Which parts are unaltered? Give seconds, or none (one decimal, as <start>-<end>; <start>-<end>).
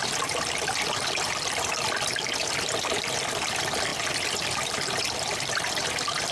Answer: 0.0-6.3